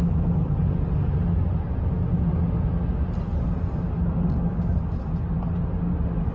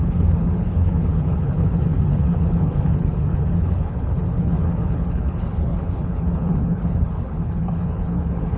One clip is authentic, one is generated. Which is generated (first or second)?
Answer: second